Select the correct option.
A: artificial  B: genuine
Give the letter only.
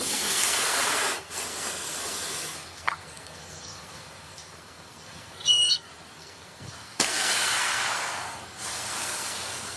A